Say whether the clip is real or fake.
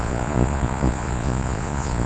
fake